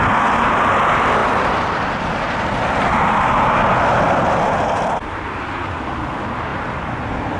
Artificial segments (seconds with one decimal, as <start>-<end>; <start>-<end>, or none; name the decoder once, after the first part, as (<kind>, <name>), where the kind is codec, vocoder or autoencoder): 1.2-2.2 (vocoder, BigVGAN v2)